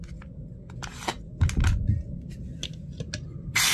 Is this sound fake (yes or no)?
no